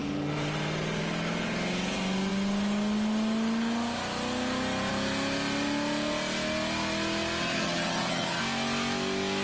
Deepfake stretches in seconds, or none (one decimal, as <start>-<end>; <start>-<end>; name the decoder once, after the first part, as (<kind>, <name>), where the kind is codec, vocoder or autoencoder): 7.4-8.4 (vocoder, HiFi-GAN)